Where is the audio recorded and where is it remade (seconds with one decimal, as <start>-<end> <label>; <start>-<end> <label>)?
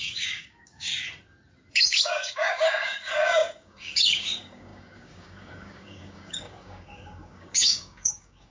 0.0-0.9 remade; 0.9-1.7 recorded; 1.7-8.5 remade